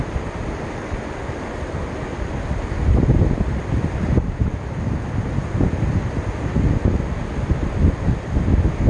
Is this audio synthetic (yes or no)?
no